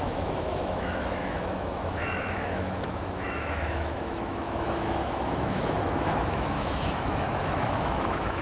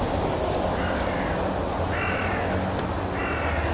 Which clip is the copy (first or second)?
first